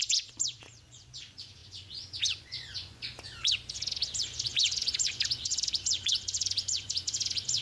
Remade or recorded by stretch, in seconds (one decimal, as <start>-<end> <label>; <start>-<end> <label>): 0.0-7.6 remade